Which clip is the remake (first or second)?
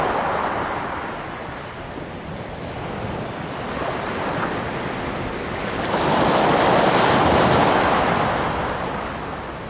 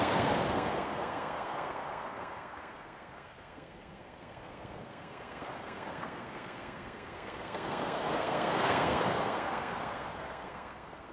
second